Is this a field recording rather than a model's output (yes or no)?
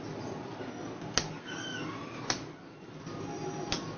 yes